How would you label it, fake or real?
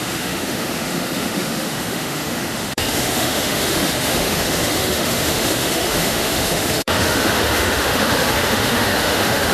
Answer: fake